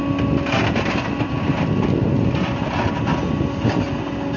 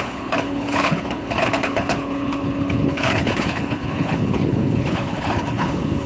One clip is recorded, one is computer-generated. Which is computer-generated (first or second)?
second